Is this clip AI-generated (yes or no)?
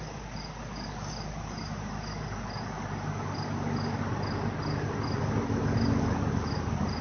no